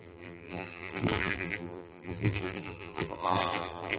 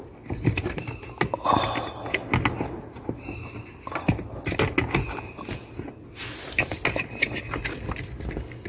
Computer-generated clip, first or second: first